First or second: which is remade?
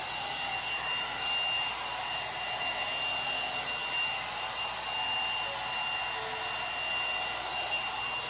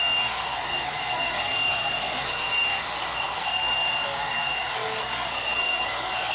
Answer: second